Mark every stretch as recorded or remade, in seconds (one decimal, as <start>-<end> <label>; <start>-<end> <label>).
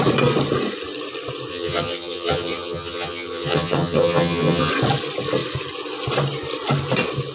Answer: 0.0-1.5 recorded; 1.5-4.7 remade; 4.7-7.3 recorded